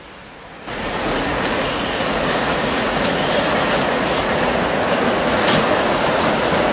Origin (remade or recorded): remade